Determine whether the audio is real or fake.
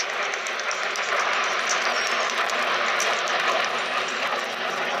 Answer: real